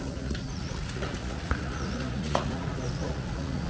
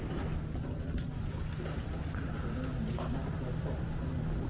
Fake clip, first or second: first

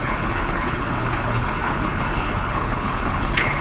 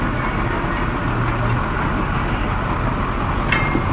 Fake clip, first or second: first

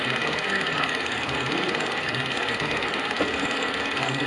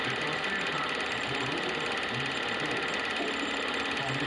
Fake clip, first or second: first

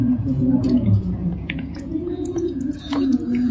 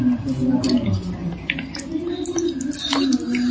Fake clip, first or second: first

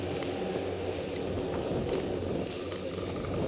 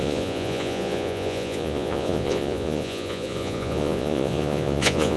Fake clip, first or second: second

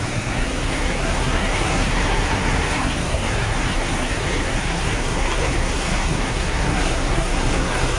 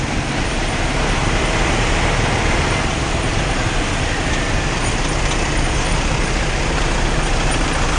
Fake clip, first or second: first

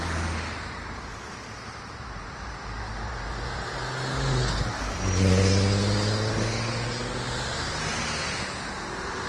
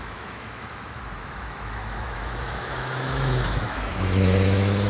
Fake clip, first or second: second